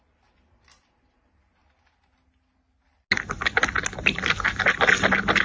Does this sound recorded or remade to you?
recorded